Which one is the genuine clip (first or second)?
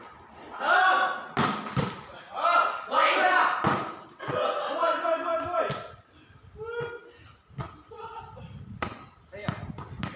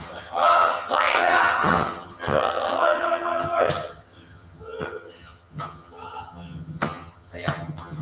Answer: first